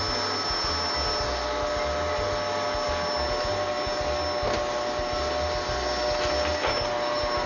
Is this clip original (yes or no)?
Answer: yes